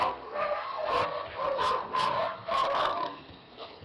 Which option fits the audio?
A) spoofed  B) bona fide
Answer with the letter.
A